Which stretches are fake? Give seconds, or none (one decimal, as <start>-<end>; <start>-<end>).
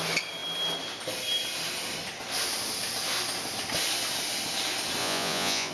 5.0-5.7